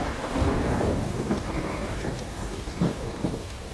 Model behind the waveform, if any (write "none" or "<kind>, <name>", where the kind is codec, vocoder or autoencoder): codec, DAC